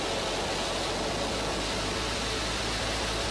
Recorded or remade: recorded